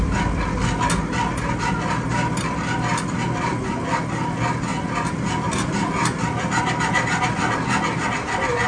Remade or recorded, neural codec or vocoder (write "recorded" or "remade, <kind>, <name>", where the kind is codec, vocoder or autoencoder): recorded